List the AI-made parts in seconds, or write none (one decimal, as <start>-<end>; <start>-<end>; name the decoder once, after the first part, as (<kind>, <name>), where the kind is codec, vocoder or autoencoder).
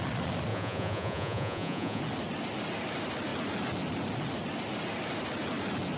0.5-2.0 (vocoder, Vocos)